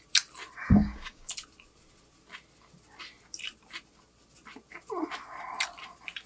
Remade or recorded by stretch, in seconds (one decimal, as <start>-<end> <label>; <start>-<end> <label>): 0.0-0.6 recorded; 0.6-1.3 remade; 1.3-6.3 recorded